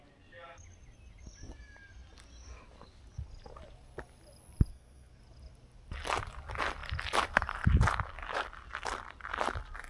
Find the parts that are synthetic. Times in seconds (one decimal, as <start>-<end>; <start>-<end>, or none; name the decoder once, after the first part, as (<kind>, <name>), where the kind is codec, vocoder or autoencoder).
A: 4.7-5.2 (codec, SNAC)